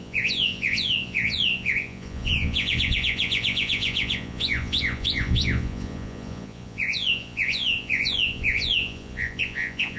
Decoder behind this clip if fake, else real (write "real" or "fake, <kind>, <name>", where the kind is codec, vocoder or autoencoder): fake, vocoder, Vocos